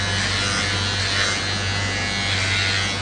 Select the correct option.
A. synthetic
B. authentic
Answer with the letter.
B